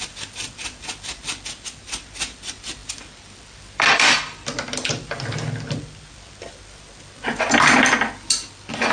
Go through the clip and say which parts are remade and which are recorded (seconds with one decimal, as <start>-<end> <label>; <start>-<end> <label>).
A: 0.0-2.8 recorded; 2.8-5.1 remade; 5.1-8.9 recorded